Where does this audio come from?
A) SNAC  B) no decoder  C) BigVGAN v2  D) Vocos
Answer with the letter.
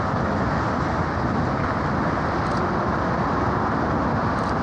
B